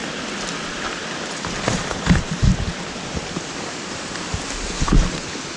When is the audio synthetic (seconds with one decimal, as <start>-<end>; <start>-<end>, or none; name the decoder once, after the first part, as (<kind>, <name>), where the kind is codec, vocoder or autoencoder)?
0.0-3.4 (vocoder, BigVGAN v2)